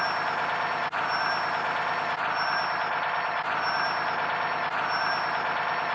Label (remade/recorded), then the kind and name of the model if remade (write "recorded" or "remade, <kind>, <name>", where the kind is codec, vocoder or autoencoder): recorded